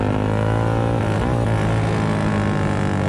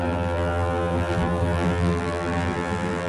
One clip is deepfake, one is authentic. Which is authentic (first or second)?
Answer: first